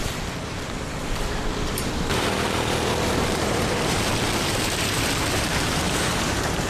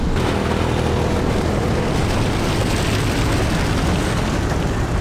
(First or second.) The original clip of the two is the second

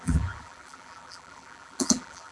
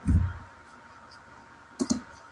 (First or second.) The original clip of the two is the second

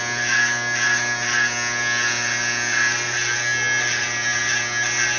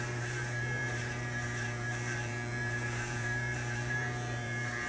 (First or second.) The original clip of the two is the first